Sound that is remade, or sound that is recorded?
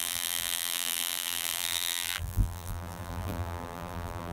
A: remade